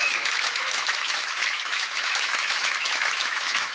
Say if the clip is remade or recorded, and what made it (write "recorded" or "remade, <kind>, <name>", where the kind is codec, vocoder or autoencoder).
remade, autoencoder, DAC-VAE